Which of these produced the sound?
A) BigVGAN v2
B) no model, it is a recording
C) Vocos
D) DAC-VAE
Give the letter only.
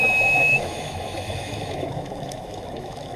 D